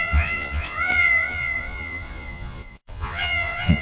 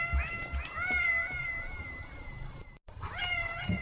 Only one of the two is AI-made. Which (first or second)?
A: first